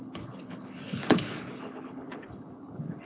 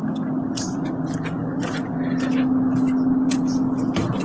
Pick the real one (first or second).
second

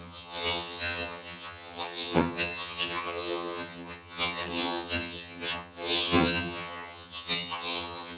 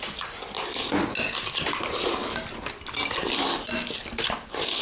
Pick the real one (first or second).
second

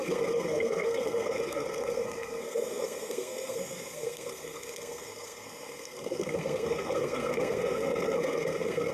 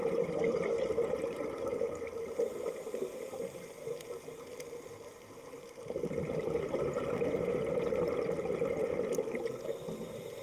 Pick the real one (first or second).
second